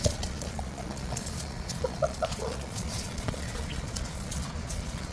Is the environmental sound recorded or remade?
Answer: remade